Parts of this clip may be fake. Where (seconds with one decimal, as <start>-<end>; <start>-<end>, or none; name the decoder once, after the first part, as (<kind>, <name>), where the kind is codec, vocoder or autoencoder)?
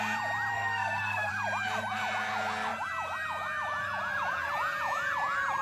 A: 0.5-1.3 (codec, SNAC)